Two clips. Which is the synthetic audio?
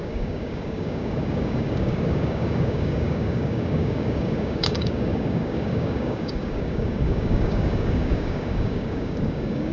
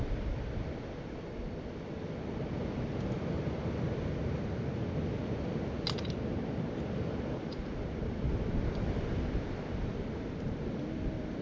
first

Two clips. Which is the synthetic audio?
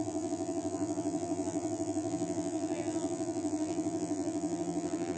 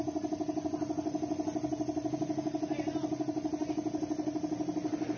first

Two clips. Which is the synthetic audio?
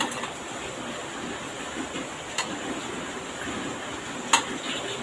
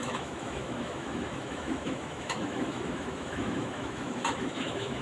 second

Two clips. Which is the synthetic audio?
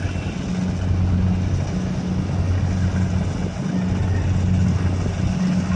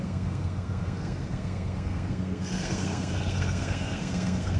second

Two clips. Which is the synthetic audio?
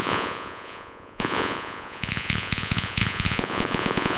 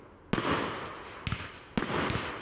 first